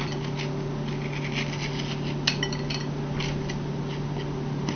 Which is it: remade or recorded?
recorded